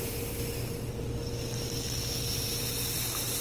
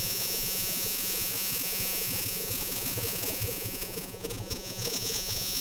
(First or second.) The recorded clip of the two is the first